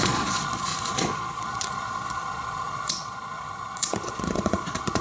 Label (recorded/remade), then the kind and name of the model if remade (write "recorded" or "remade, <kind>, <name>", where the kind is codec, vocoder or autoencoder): remade, vocoder, Vocos